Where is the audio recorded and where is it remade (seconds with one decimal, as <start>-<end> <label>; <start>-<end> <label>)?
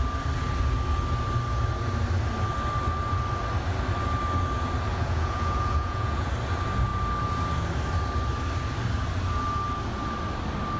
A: 0.0-4.9 recorded; 4.9-6.3 remade; 6.3-10.8 recorded